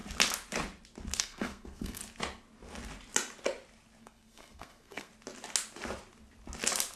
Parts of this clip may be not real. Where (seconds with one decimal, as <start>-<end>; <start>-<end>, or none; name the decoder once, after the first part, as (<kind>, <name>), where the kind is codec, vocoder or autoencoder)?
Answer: 1.2-2.0 (codec, SNAC); 4.0-5.1